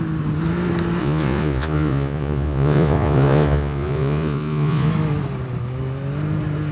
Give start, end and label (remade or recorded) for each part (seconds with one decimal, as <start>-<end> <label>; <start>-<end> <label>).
0.0-1.0 recorded; 1.0-4.9 remade; 4.9-6.7 recorded